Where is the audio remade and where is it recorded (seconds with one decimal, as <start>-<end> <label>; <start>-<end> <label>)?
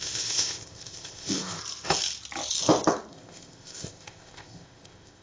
0.0-1.6 remade; 1.6-3.1 recorded; 3.1-5.2 remade